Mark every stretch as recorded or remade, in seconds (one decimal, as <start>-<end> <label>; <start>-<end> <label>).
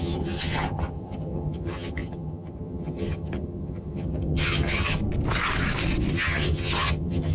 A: 0.0-5.0 remade; 5.0-6.1 recorded; 6.1-7.3 remade